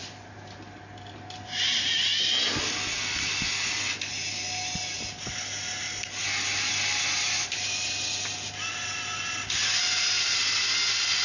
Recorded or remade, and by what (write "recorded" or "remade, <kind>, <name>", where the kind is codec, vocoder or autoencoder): recorded